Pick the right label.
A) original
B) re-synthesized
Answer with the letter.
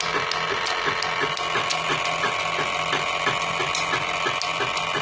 A